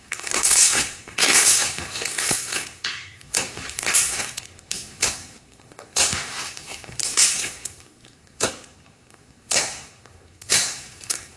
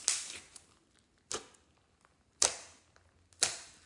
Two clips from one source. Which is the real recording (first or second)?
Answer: second